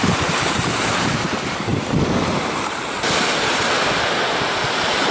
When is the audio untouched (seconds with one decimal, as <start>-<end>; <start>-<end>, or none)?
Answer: 1.7-4.5